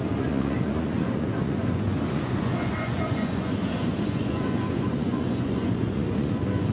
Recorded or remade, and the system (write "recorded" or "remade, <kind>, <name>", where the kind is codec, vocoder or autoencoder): remade, vocoder, Vocos